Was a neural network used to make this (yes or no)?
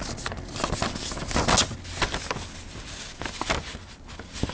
no